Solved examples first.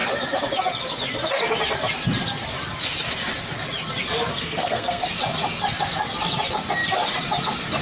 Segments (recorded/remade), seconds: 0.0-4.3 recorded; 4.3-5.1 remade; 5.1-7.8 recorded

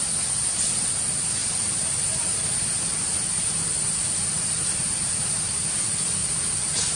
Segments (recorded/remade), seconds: 0.0-7.0 recorded

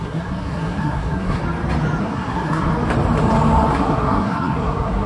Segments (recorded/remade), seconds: 0.0-1.4 remade; 1.4-2.0 recorded; 2.0-2.7 remade; 2.7-3.7 recorded; 3.7-5.1 remade

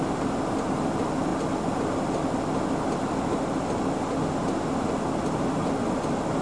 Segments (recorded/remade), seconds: 0.0-6.4 recorded

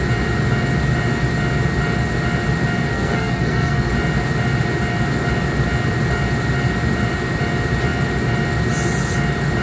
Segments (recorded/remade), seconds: 0.0-2.9 recorded; 2.9-3.9 remade; 3.9-9.6 recorded